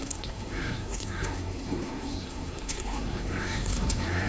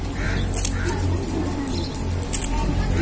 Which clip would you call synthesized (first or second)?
first